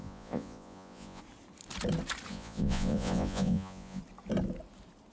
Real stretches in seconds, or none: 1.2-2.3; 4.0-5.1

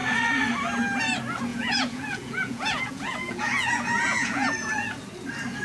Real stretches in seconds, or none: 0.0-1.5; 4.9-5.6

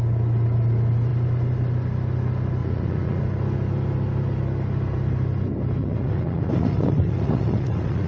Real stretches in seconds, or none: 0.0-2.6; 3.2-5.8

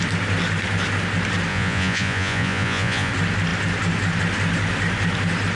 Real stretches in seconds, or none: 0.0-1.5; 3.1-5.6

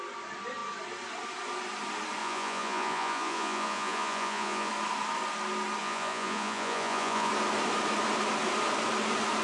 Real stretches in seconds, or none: 0.0-2.2; 4.7-5.8; 7.3-9.4

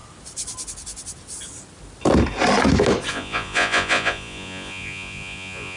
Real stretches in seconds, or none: 0.0-3.1

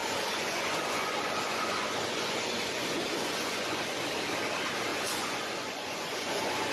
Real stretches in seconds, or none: 4.0-4.9